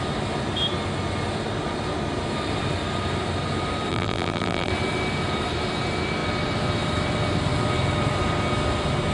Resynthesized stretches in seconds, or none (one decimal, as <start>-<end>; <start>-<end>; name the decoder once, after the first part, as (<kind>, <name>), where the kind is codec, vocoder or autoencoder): 3.9-4.7 (vocoder, BigVGAN v2)